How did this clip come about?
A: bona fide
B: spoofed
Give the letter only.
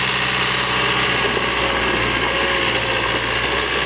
A